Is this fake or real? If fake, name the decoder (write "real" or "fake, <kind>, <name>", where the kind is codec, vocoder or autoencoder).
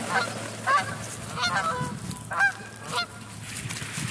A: real